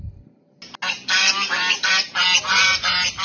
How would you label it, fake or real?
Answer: real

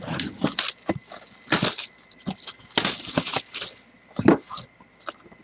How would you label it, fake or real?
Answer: real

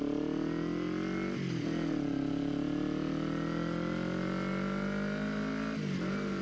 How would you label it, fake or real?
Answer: real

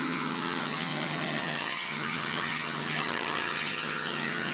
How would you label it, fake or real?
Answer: fake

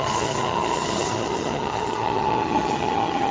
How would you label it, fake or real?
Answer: fake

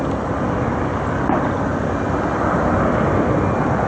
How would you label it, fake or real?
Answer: real